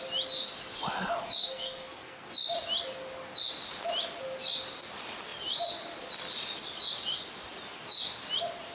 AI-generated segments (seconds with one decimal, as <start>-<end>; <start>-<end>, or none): 1.4-2.3

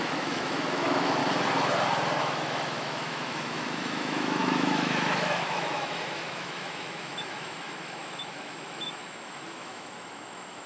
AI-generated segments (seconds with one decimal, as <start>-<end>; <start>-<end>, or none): 0.0-1.2; 2.2-10.7

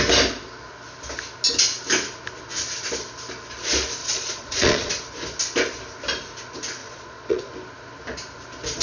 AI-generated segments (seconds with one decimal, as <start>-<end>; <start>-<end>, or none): 4.0-4.9; 6.8-7.5

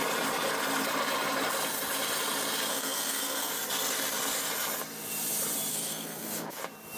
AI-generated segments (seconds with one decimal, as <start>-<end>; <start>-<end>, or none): 2.7-3.5; 5.7-6.6

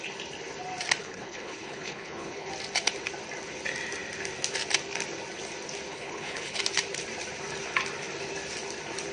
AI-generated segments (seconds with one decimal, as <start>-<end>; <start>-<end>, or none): 1.0-2.5; 5.9-6.6

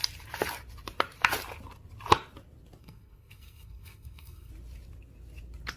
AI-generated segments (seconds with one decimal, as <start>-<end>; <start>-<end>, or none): 2.8-4.5

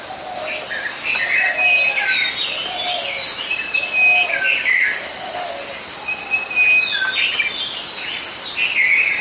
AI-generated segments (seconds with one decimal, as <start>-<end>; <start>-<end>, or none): none

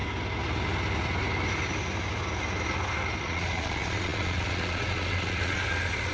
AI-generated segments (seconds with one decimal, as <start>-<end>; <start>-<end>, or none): 3.2-6.1